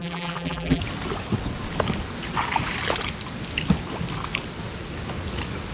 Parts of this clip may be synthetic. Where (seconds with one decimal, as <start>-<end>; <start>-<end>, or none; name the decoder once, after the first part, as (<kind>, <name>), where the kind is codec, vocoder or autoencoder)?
0.0-0.8 (vocoder, BigVGAN v2)